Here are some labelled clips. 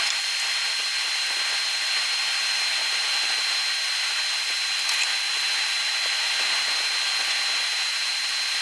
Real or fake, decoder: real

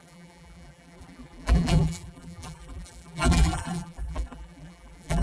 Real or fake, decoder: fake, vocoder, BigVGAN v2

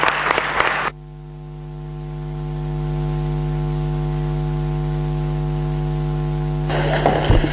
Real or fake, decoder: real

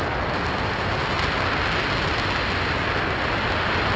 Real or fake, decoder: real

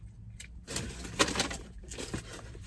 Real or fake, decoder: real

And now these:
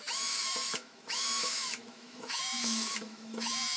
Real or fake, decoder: fake, autoencoder, DAC-VAE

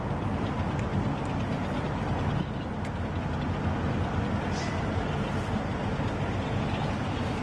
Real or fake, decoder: real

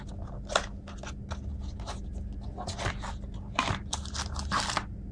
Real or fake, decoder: real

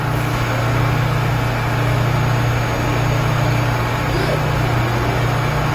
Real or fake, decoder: real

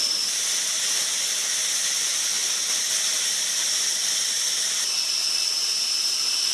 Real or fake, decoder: real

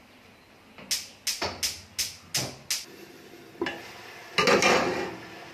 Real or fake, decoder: real